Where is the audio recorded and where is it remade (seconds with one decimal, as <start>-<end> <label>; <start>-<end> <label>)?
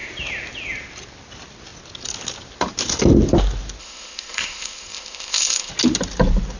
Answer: 0.0-3.8 recorded; 3.8-5.7 remade; 5.7-6.6 recorded